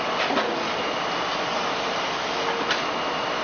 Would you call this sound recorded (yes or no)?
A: yes